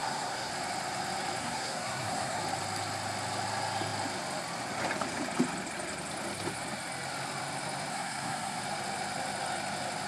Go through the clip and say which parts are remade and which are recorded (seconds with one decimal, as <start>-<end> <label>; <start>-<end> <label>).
0.0-0.5 remade; 0.5-1.4 recorded; 1.4-2.4 remade; 2.4-7.9 recorded; 7.9-8.6 remade; 8.6-10.1 recorded